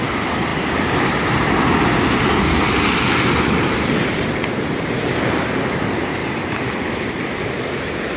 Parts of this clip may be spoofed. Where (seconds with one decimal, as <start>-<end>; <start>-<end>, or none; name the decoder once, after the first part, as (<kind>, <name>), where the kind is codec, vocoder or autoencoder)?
6.2-6.7 (vocoder, BigVGAN v2)